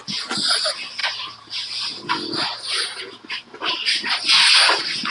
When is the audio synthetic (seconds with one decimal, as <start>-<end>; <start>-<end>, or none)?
none